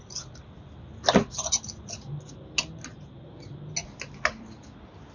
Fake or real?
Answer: real